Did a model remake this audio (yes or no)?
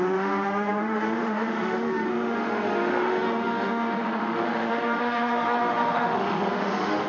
yes